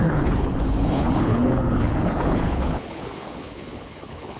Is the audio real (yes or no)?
no